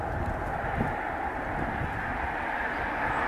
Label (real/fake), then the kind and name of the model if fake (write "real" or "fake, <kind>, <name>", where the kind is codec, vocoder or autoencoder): real